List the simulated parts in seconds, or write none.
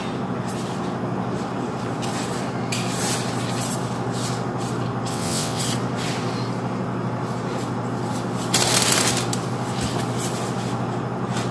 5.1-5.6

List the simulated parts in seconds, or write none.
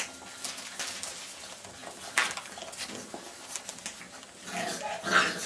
none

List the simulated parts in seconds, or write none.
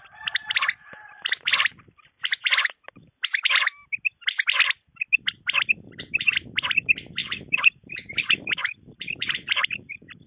7.2-10.3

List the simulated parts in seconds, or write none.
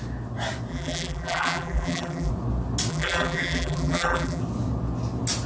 0.7-2.3; 2.9-4.4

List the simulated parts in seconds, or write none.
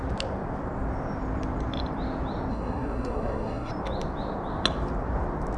2.5-3.7